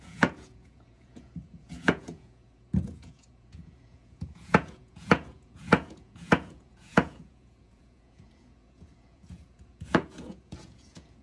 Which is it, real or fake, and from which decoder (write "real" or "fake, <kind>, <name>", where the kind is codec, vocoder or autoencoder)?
fake, vocoder, Vocos